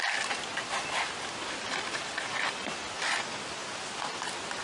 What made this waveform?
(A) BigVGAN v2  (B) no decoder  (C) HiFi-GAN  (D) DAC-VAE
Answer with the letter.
B